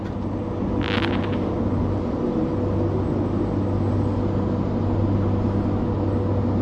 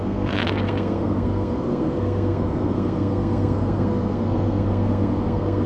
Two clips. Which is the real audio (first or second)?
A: first